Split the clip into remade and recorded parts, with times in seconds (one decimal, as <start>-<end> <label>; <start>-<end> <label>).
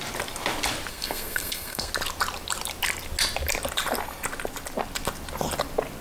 0.0-0.9 recorded; 0.9-1.9 remade; 1.9-6.0 recorded